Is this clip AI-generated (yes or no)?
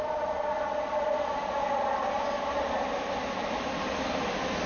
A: no